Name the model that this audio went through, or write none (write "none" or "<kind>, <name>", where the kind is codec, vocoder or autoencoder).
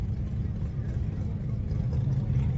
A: none